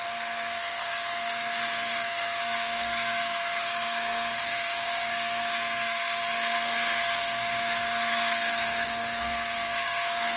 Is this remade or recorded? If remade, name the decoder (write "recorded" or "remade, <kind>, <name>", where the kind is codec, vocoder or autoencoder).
remade, codec, SNAC